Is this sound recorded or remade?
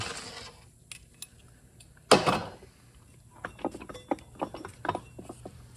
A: recorded